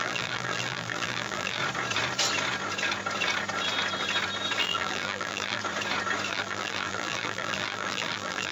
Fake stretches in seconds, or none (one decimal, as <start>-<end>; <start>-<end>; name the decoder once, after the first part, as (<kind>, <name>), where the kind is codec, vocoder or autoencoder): 0.0-1.6 (vocoder, BigVGAN v2); 4.6-5.6; 6.3-8.5